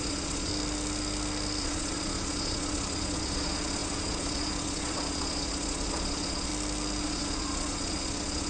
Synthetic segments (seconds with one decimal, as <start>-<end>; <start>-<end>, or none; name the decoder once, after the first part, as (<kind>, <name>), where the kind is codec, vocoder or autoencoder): 0.0-0.5 (vocoder, Vocos); 1.6-6.5; 7.0-8.5